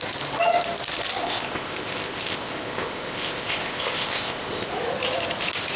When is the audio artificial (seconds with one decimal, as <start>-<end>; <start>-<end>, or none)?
1.2-4.7